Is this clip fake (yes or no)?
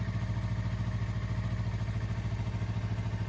no